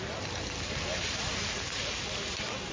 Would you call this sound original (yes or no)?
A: yes